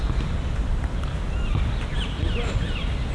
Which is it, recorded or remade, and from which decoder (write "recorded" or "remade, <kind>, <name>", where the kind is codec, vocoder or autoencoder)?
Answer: remade, vocoder, BigVGAN v2